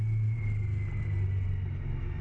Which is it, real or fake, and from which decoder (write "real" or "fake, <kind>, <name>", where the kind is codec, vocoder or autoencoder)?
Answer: real